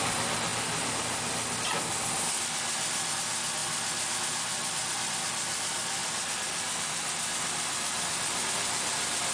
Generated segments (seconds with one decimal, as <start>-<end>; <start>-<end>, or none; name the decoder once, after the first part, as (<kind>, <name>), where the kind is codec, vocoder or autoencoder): none